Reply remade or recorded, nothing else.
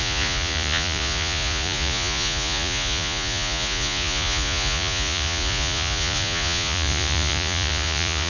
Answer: remade